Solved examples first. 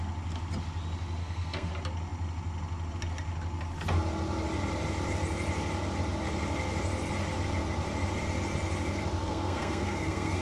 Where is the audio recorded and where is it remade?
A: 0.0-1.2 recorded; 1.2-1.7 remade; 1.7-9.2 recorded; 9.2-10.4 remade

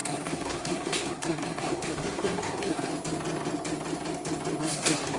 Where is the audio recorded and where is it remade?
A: 0.0-2.9 remade; 2.9-4.6 recorded; 4.6-5.2 remade

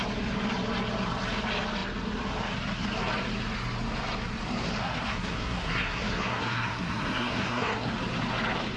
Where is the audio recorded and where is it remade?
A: 0.0-4.8 recorded; 4.8-7.9 remade; 7.9-8.8 recorded